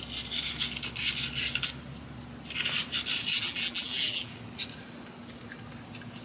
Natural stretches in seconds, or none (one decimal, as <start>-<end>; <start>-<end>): 0.0-3.3; 4.3-6.2